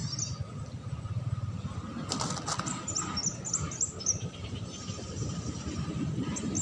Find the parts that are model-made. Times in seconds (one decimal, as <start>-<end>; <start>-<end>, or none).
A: 4.0-6.6